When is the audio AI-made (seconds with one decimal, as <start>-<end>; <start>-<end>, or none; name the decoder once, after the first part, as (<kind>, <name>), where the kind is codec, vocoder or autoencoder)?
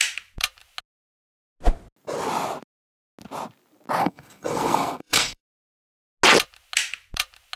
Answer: 4.0-5.4 (codec, SNAC)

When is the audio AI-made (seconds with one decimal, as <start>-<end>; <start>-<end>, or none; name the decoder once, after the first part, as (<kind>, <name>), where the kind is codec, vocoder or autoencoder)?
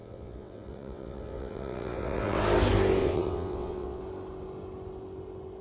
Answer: 0.0-2.4 (vocoder, WaveNeXt); 3.0-4.0